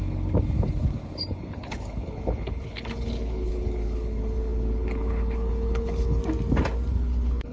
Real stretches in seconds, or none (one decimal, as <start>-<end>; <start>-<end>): 6.2-6.9